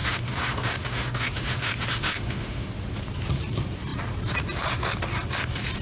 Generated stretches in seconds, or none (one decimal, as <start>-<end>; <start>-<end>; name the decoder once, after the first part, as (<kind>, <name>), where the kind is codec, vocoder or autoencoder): 0.0-2.7 (autoencoder, DAC-VAE)